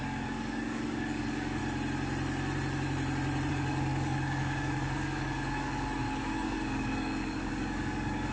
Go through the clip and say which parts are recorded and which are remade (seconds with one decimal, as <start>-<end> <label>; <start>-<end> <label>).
0.0-1.6 remade; 1.6-3.5 recorded; 3.5-8.3 remade